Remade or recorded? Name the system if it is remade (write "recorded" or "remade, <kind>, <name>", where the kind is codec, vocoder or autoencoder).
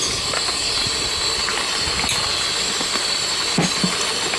recorded